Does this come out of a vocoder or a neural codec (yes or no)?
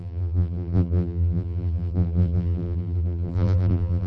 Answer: yes